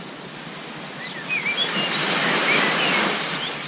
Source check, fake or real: real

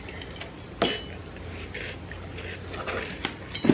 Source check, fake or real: real